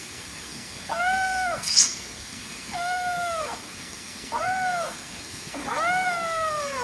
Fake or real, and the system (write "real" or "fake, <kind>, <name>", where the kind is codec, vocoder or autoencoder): fake, codec, SNAC